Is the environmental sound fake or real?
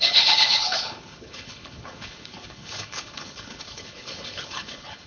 fake